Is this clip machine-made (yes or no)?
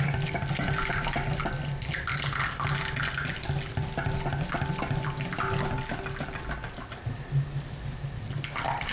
no